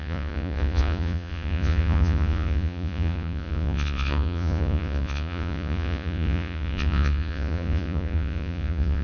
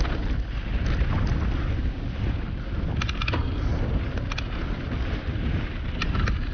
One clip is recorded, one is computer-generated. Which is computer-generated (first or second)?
first